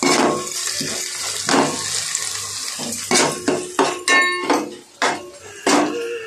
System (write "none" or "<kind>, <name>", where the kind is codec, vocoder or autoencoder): none